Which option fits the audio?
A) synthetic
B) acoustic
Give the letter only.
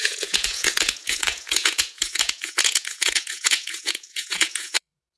A